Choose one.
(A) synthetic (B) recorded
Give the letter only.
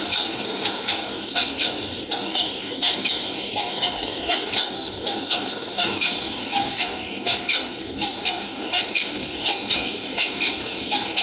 A